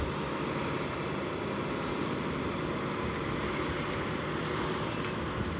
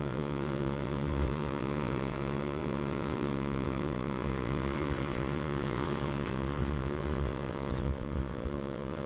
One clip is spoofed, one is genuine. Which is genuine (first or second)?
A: first